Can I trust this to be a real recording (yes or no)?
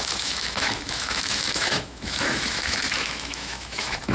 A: no